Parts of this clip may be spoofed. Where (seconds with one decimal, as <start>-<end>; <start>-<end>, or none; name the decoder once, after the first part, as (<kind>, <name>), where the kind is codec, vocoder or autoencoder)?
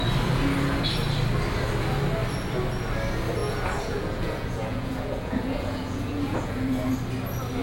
3.4-6.9 (vocoder, Vocos)